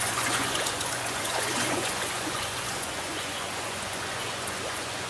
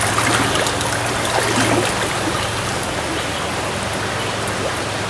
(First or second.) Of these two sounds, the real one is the second